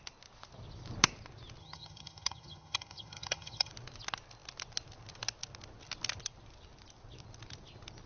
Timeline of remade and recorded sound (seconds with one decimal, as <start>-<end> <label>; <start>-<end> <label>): 0.0-1.6 recorded; 1.6-3.7 remade; 3.7-8.1 recorded